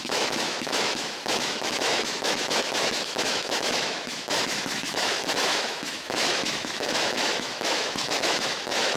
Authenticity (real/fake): fake